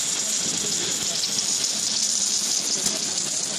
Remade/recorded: recorded